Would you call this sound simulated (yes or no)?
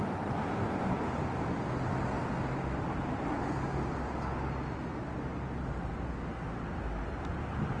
no